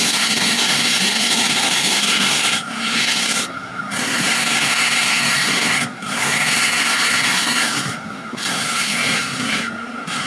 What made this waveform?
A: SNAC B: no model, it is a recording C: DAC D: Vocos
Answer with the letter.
A